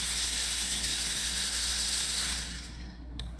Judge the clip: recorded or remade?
remade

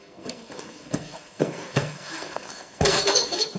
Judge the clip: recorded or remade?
remade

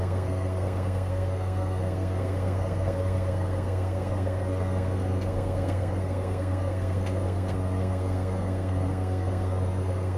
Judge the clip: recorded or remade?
remade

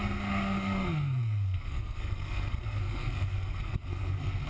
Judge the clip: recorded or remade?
remade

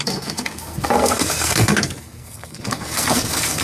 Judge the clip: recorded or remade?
remade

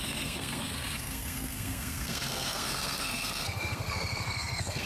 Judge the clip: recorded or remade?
remade